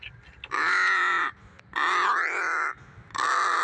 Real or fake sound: real